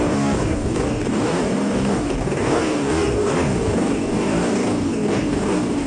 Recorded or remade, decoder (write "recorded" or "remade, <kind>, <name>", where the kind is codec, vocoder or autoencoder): remade, codec, DAC